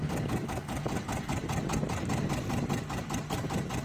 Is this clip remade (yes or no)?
no